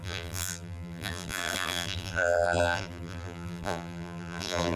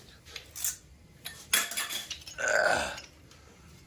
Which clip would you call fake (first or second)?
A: first